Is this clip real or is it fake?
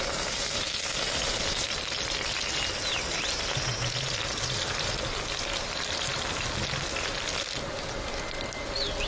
real